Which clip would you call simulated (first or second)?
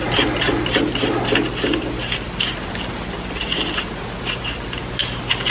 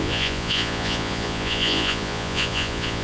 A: second